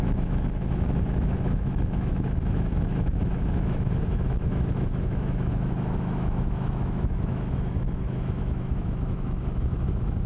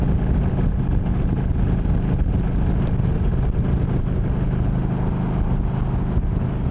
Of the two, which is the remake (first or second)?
first